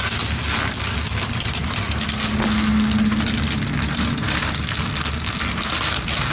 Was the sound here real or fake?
real